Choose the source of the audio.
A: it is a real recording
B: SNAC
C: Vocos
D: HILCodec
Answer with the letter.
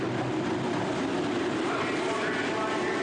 A